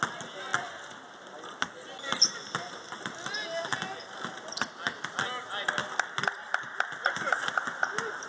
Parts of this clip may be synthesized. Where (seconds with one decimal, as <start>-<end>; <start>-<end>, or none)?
none

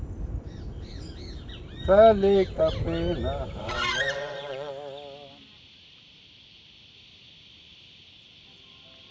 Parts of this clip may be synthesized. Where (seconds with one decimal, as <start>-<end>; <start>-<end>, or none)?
3.6-4.7

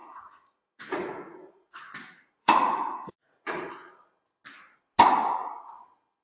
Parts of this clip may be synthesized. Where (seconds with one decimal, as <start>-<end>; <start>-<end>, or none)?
0.0-3.7

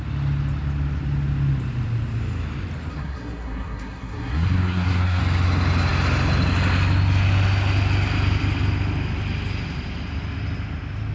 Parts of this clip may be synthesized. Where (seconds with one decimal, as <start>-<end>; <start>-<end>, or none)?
2.9-5.2

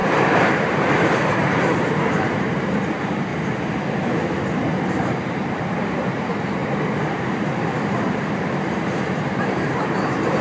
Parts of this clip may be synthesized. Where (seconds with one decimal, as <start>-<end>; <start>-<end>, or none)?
0.0-3.3; 4.9-10.4